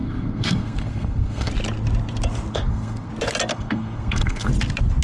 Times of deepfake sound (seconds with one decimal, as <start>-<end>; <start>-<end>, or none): 0.0-1.5; 2.5-3.1; 3.5-4.5